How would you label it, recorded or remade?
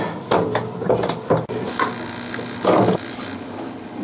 recorded